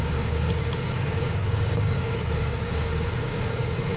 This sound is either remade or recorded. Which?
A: remade